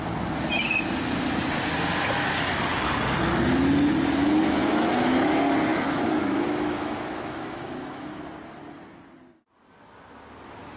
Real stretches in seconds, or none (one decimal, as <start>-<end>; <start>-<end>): 0.0-4.6; 5.3-5.7; 8.2-10.8

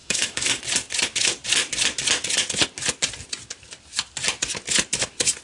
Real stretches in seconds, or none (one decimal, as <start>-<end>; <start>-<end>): 0.6-5.4

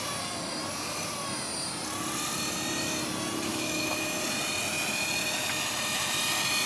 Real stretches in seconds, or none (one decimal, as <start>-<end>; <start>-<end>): 0.0-3.5; 4.2-6.7

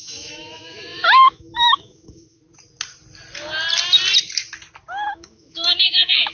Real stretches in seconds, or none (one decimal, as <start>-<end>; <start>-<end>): 2.4-5.1

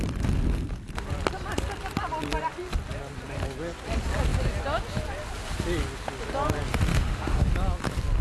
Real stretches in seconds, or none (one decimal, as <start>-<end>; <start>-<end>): 0.0-6.9; 7.5-8.2